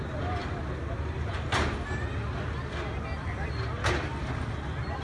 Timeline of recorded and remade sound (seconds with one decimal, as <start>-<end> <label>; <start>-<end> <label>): 0.0-5.0 recorded